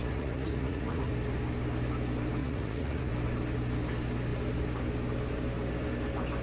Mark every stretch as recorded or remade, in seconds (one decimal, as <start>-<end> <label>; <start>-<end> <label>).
0.0-1.1 remade; 1.1-2.4 recorded; 2.4-3.1 remade; 3.1-6.4 recorded